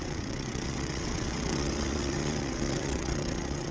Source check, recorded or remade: remade